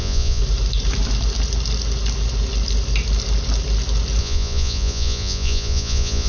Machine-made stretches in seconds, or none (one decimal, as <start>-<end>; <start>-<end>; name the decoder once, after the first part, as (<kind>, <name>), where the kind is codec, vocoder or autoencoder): 0.0-0.4 (vocoder, Vocos); 4.2-6.3